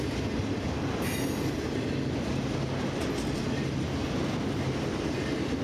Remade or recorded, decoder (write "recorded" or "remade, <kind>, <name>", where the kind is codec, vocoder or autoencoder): recorded